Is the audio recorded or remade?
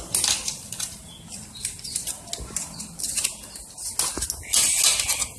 recorded